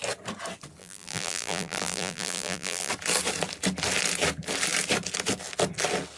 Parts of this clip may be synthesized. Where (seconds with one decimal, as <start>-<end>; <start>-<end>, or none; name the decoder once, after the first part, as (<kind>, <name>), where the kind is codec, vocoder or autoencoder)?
0.8-2.9 (vocoder, BigVGAN v2)